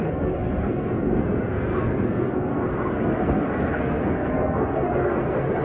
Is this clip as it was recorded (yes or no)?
no